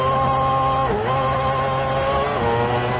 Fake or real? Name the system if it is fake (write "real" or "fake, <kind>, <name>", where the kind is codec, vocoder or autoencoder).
real